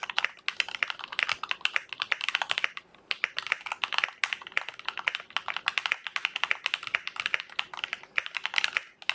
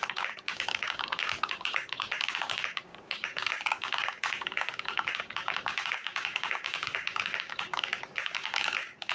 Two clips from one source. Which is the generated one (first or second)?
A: second